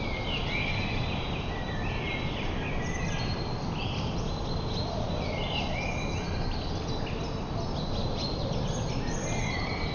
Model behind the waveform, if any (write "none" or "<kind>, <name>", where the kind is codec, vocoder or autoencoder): none